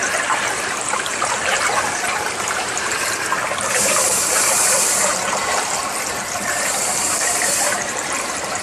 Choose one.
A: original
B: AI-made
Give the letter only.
B